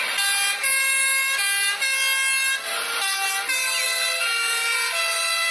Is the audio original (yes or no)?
yes